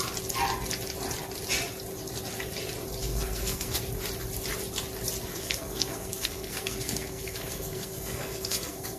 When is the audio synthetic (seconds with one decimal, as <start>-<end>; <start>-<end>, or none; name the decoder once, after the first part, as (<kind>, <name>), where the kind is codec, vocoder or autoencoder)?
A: 3.0-3.8 (codec, SNAC); 5.3-9.0